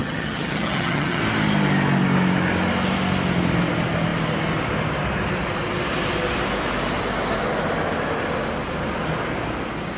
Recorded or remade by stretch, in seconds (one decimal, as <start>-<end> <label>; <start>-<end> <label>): 0.0-1.2 remade; 1.2-10.0 recorded